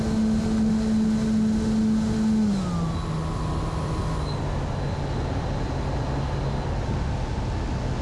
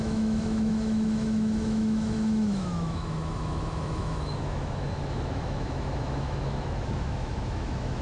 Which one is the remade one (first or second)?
second